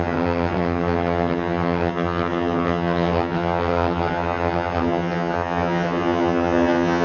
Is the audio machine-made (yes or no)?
yes